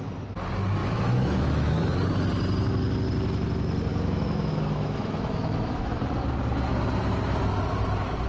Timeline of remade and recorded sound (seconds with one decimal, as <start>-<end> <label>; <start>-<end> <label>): 0.0-0.8 recorded; 0.8-1.9 remade; 1.9-3.9 recorded; 3.9-6.0 remade; 6.0-8.3 recorded